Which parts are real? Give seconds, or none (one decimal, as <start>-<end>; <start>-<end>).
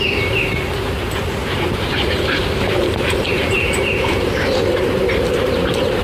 0.0-1.4; 5.0-6.0